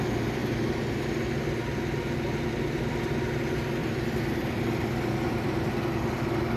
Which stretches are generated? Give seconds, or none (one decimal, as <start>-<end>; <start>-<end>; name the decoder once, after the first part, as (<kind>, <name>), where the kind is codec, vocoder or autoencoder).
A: 3.8-5.7 (vocoder, BigVGAN v2)